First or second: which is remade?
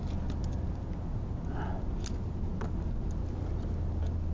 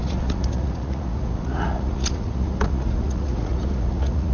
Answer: second